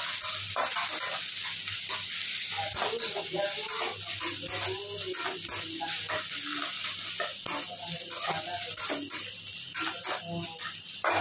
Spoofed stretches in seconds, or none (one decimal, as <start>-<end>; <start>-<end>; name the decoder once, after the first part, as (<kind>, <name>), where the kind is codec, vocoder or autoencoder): none